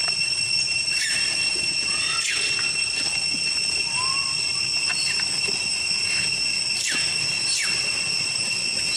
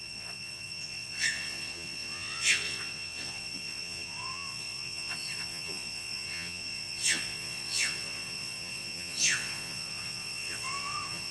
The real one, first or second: first